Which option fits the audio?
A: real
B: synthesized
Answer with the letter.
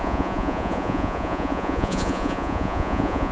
B